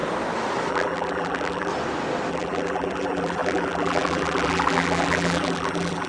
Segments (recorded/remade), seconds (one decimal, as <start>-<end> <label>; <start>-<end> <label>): 0.0-0.7 recorded; 0.7-1.7 remade; 1.7-2.3 recorded; 2.3-6.1 remade